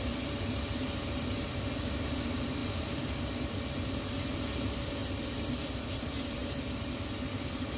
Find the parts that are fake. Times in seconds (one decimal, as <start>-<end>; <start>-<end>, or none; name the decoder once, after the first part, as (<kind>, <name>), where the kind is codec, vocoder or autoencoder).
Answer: none